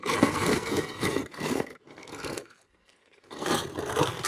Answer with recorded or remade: remade